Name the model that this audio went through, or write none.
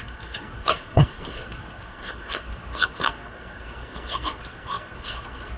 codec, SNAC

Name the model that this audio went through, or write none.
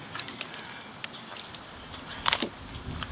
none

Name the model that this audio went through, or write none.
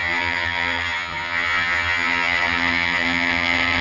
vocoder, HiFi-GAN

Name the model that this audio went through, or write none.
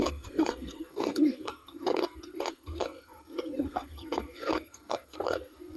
codec, SNAC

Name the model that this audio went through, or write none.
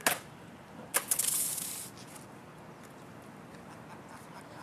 none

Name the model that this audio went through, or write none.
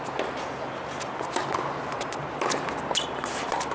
none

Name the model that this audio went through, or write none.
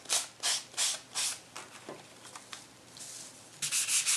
none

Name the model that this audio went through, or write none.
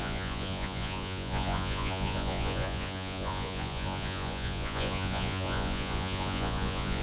vocoder, Vocos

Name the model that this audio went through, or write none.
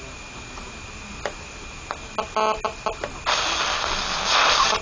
none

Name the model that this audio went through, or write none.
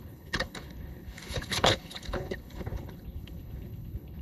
codec, HILCodec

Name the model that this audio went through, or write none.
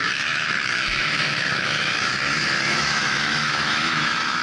autoencoder, DAC-VAE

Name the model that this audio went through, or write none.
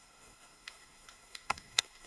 codec, SNAC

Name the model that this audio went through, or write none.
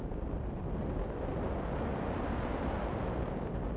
none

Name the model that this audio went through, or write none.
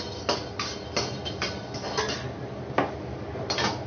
none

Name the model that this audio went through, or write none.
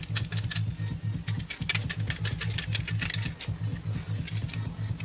none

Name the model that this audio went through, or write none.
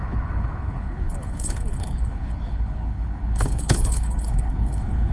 codec, HILCodec